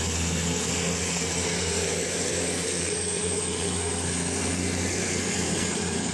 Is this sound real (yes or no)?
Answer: no